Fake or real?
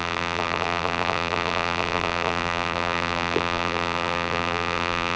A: fake